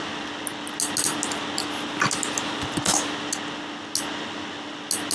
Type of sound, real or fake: real